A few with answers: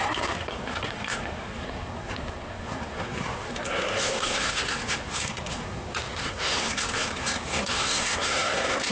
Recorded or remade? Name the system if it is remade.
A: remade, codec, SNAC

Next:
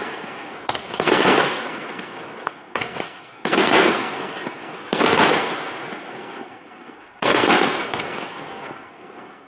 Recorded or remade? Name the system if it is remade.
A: remade, codec, SNAC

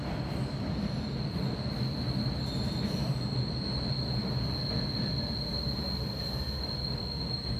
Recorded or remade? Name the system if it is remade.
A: recorded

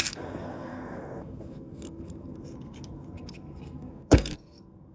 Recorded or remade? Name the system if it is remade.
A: remade, codec, SNAC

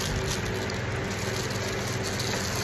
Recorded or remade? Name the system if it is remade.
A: recorded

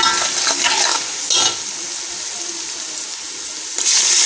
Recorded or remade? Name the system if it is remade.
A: recorded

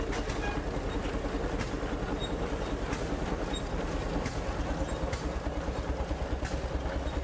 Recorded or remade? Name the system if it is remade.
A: recorded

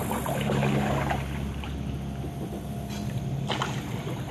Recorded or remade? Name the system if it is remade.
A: recorded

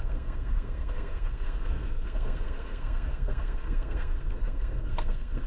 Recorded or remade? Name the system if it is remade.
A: remade, codec, SNAC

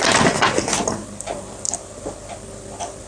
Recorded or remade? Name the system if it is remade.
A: recorded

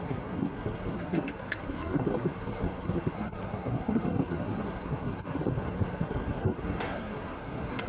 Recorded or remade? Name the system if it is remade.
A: remade, codec, SNAC